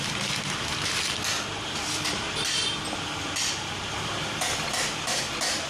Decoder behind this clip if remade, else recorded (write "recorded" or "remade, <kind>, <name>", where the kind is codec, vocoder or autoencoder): recorded